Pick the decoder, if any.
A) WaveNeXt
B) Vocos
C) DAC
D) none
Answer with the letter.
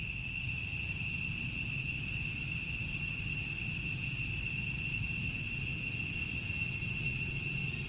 D